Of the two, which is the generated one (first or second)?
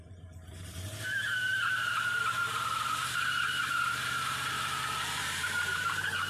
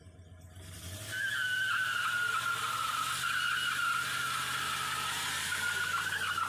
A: first